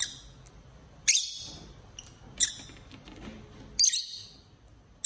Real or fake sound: real